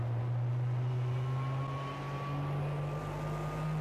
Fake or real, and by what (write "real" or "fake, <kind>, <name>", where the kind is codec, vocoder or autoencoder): real